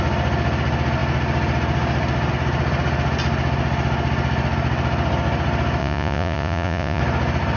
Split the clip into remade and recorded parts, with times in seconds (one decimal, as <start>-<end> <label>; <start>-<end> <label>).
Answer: 0.0-5.8 recorded; 5.8-7.0 remade; 7.0-7.6 recorded